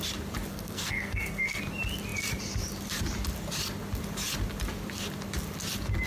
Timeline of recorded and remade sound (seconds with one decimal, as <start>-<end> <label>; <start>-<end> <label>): 0.0-0.5 recorded; 0.5-1.6 remade; 1.6-6.1 recorded